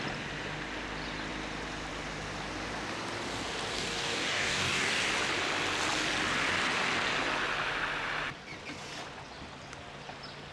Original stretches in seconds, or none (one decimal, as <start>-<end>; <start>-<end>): 0.0-3.7; 5.0-10.5